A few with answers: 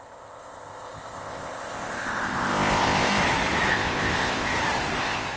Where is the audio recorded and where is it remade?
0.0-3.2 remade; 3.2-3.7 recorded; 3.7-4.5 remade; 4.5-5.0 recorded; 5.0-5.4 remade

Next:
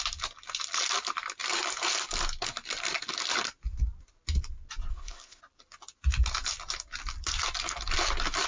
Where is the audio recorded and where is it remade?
0.0-4.9 recorded; 4.9-5.4 remade; 5.4-8.5 recorded

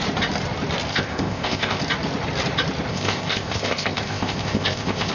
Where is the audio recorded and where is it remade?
0.0-0.9 recorded; 0.9-1.8 remade; 1.8-2.9 recorded; 2.9-5.1 remade